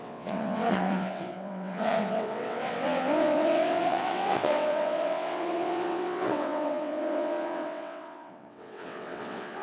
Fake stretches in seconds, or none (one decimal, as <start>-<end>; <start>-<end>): 0.0-9.6